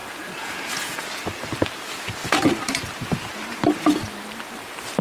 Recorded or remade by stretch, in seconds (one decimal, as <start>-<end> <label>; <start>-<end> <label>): 0.0-1.0 remade; 1.0-5.0 recorded